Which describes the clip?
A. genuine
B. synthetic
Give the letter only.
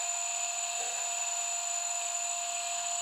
B